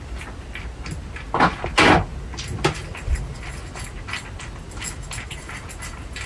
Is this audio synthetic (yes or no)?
no